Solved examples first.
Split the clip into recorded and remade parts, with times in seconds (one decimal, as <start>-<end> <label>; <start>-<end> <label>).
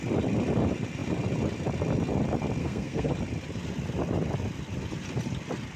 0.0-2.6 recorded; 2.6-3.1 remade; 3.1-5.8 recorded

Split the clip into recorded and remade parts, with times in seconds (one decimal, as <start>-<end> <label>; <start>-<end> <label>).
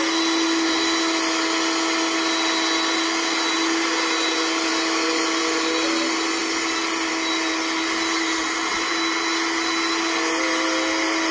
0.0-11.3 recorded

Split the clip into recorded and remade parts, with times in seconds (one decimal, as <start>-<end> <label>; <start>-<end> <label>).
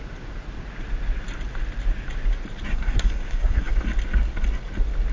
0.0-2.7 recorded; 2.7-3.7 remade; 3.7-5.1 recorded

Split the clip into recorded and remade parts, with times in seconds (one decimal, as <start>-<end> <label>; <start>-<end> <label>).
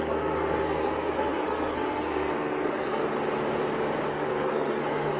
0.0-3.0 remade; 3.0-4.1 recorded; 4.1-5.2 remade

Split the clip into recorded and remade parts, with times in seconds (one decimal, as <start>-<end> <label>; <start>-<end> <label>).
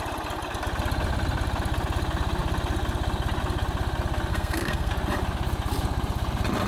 0.0-4.3 recorded; 4.3-4.9 remade; 4.9-6.7 recorded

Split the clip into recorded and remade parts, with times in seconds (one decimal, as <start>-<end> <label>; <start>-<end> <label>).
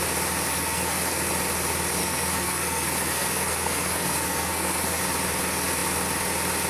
0.0-0.5 recorded; 0.5-1.3 remade; 1.3-2.0 recorded; 2.0-5.0 remade; 5.0-6.7 recorded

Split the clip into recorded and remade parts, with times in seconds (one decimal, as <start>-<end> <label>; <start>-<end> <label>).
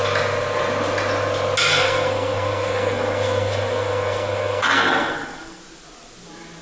0.0-1.7 recorded; 1.7-5.6 remade; 5.6-6.6 recorded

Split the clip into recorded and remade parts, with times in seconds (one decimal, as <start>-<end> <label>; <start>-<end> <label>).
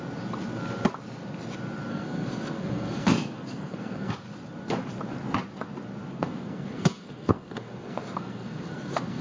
0.0-1.9 recorded; 1.9-4.1 remade; 4.1-6.1 recorded; 6.1-9.2 remade